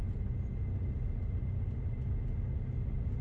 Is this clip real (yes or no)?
yes